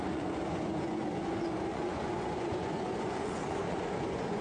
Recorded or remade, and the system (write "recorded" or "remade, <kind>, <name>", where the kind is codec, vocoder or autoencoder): remade, vocoder, Vocos